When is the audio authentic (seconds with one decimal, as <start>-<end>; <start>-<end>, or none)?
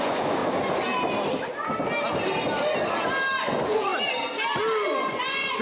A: 0.4-3.4; 3.9-5.1